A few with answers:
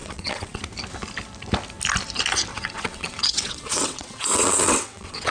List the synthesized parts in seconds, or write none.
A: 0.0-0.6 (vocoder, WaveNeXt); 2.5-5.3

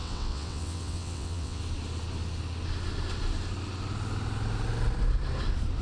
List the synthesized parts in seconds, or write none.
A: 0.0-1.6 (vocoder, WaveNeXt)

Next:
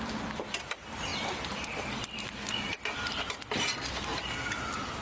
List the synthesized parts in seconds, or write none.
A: none

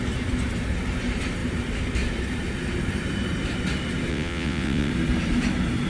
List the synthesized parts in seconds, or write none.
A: 4.1-4.9 (vocoder, WaveNeXt)